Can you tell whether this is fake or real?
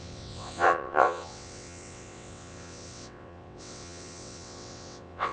fake